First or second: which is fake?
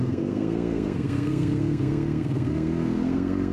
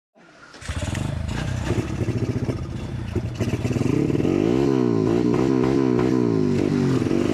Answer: first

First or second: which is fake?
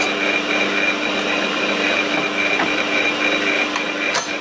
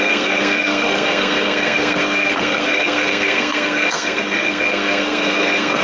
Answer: second